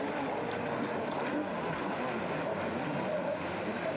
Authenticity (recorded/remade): recorded